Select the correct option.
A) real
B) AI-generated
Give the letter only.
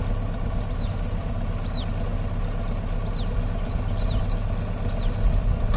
A